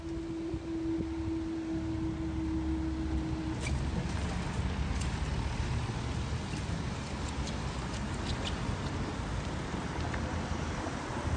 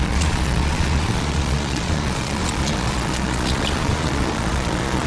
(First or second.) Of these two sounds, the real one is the first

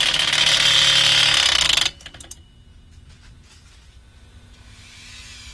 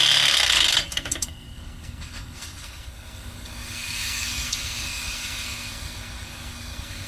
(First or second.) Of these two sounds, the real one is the first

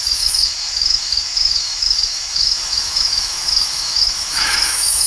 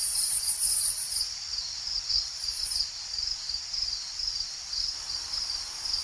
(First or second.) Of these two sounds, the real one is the second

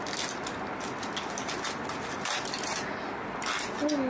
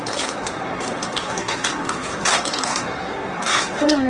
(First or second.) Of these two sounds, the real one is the first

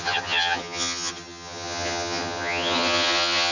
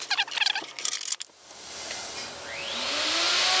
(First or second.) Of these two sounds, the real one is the second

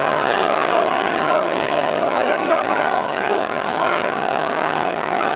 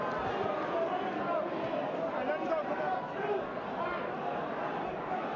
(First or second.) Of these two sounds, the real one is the second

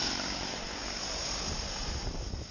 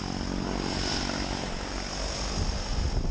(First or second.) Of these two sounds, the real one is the second